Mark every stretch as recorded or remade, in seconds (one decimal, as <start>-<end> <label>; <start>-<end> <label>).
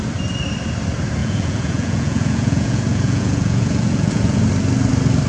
0.0-1.2 recorded; 1.2-4.4 remade; 4.4-5.3 recorded